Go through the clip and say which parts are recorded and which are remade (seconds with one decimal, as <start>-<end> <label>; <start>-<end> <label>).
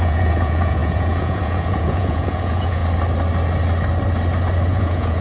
0.0-2.8 remade; 2.8-4.7 recorded; 4.7-5.2 remade